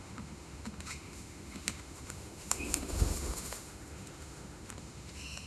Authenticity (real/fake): fake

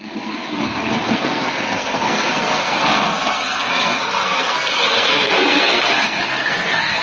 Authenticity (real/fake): fake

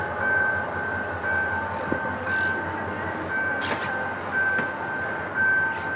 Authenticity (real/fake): real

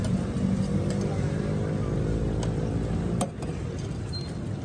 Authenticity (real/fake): real